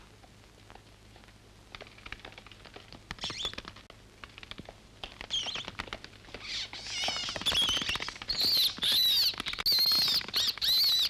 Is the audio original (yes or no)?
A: yes